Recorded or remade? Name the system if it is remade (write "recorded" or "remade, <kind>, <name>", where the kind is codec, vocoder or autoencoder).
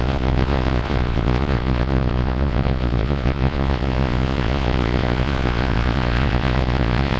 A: remade, vocoder, Vocos